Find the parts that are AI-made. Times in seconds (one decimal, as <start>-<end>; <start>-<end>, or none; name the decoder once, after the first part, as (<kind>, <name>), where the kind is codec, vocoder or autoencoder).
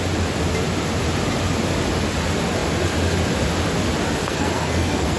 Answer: 4.2-5.2 (codec, SNAC)